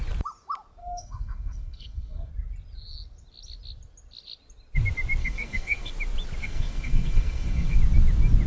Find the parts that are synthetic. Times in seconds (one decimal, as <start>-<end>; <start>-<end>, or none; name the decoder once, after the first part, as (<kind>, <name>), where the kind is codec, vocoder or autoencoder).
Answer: 0.8-2.3 (codec, SNAC); 5.2-5.9; 6.4-7.8